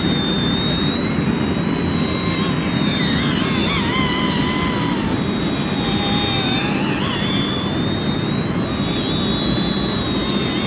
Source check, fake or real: real